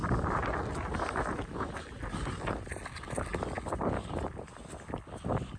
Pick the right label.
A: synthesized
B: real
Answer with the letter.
B